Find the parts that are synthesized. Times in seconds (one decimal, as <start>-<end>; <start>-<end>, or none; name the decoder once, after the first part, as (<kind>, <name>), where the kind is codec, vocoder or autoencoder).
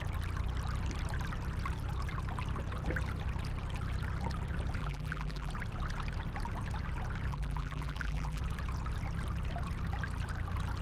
4.8-5.5 (vocoder, BigVGAN v2); 7.3-8.4